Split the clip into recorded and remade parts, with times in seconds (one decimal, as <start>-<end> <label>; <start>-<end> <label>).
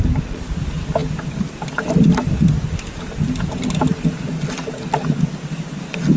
0.0-6.2 recorded